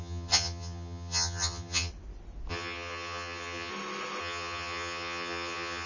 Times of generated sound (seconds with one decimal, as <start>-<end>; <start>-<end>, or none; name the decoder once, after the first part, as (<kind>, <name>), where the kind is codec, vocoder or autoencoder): 0.0-1.9 (vocoder, HiFi-GAN); 2.5-3.7; 4.2-5.9

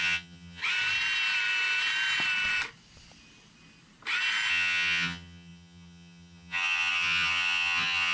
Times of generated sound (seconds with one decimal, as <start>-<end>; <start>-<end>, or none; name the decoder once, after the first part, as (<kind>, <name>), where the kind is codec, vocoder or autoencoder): 0.0-0.6 (vocoder, HiFi-GAN); 4.5-8.1

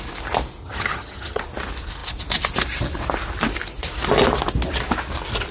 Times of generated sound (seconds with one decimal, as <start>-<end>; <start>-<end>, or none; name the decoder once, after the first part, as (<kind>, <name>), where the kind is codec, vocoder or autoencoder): 0.6-1.4 (vocoder, HiFi-GAN)

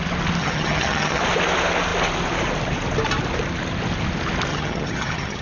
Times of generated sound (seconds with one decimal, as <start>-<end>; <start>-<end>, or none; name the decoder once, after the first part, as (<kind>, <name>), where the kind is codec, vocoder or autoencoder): 0.4-1.2 (vocoder, HiFi-GAN); 4.5-5.4

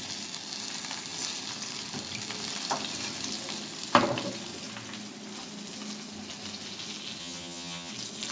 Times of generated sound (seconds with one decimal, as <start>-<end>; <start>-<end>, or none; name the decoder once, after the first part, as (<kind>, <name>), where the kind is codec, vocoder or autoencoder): 7.2-7.9 (vocoder, HiFi-GAN)

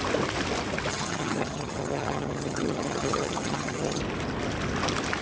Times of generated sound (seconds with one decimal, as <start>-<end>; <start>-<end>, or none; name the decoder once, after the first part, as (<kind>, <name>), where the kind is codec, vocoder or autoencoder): 0.9-4.0 (vocoder, HiFi-GAN)

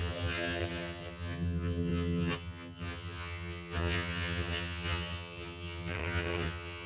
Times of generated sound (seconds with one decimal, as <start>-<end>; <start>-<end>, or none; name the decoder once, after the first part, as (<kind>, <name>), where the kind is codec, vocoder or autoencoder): 0.0-6.9 (vocoder, HiFi-GAN)

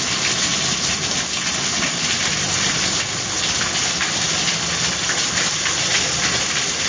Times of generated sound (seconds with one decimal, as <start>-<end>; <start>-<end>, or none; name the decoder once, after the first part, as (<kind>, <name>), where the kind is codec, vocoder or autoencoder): none